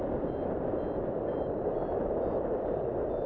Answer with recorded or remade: recorded